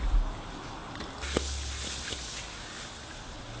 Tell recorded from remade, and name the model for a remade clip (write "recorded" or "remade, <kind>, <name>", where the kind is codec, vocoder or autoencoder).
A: recorded